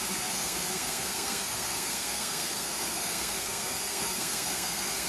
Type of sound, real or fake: fake